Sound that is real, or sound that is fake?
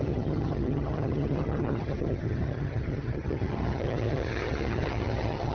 fake